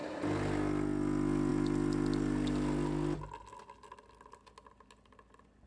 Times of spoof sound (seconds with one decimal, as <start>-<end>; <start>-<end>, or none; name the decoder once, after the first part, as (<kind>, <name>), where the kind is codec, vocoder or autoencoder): none